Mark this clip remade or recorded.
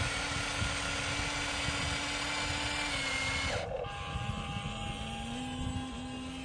recorded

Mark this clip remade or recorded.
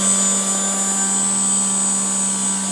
recorded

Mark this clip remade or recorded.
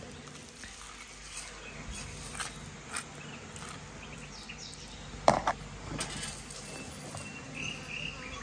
recorded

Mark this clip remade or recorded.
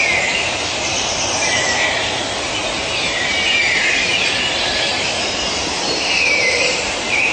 remade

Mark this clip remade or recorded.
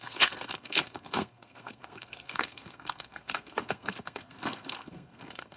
remade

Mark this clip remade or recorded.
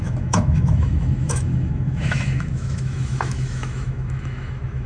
remade